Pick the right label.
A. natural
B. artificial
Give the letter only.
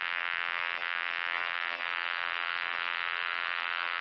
B